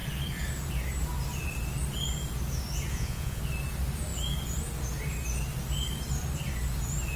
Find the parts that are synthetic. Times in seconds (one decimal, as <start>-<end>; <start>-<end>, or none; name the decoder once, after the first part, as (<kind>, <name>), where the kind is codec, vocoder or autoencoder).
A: 2.9-3.4 (vocoder, Vocos)